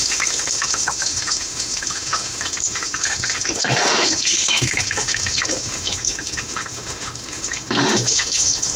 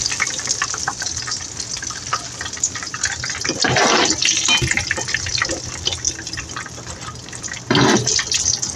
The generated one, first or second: first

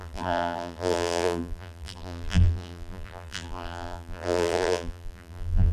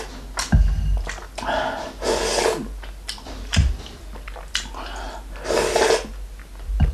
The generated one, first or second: first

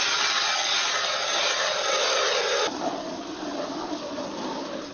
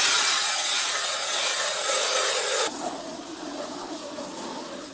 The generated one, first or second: second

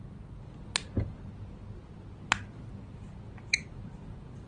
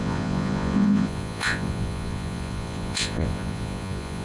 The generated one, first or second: second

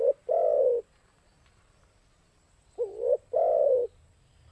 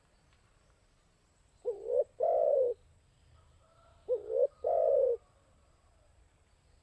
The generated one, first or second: second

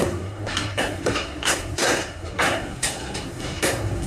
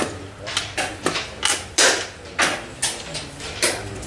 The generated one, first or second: first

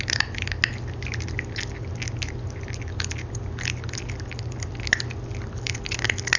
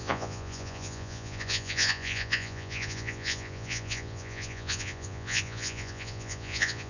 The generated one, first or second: second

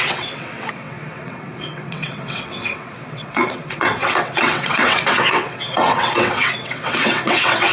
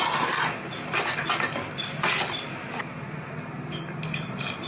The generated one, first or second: first